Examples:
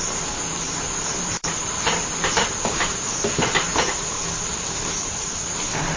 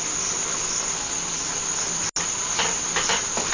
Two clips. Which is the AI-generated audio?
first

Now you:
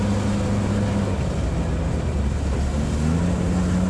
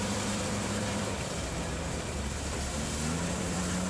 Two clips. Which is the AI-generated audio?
second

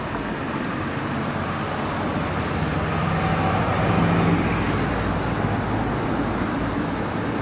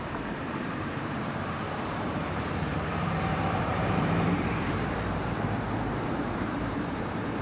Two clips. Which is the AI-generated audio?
second